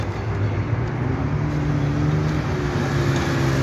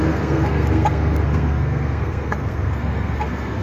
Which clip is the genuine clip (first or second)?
first